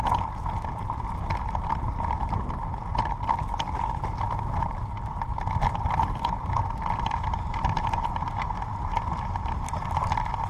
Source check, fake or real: real